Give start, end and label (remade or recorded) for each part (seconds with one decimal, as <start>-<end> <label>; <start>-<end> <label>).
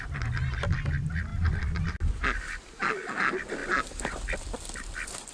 0.0-5.3 recorded